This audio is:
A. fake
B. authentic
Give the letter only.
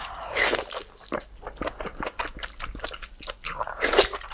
B